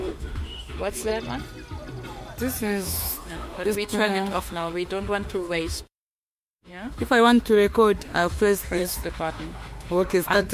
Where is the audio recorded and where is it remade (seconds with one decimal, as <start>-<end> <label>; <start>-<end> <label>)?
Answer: 0.0-1.1 remade; 1.1-2.6 recorded; 2.6-10.5 remade